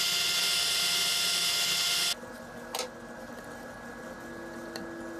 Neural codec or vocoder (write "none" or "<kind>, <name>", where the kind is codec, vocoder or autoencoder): none